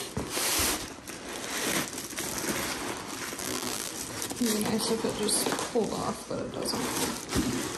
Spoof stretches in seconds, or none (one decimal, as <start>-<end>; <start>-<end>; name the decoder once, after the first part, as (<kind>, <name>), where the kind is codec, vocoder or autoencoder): 3.4-3.9 (vocoder, BigVGAN v2)